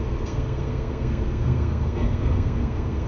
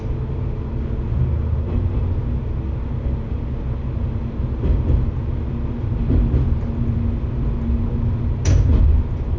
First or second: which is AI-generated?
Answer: first